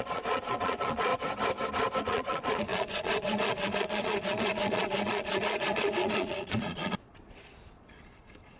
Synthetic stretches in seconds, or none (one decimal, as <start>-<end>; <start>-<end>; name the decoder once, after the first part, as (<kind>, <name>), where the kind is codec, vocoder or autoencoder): 0.0-1.1 (vocoder, Vocos); 2.0-8.6